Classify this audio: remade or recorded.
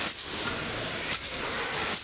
recorded